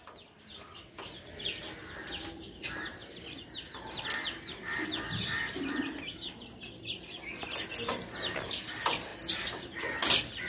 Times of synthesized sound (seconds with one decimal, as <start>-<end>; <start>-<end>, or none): none